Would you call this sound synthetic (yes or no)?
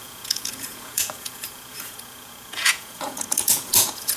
yes